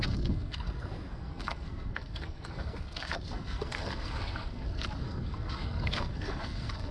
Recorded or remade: remade